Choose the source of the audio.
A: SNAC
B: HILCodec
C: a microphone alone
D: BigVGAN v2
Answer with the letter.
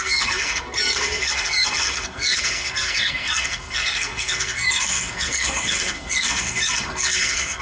A